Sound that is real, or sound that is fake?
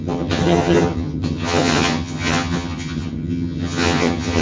fake